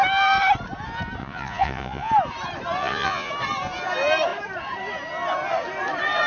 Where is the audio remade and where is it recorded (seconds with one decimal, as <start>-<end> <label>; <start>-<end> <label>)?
0.0-1.2 recorded; 1.2-2.1 remade; 2.1-2.8 recorded; 2.8-3.3 remade; 3.3-6.3 recorded